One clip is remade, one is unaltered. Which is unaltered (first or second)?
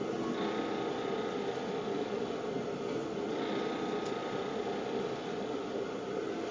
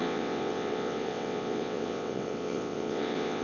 first